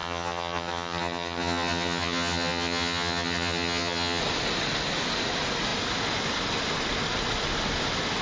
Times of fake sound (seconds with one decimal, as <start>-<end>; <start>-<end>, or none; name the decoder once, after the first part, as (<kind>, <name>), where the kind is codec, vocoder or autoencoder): 0.0-4.2 (vocoder, HiFi-GAN)